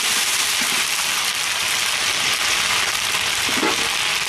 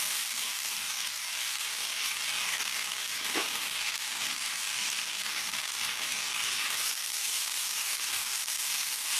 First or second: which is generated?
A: second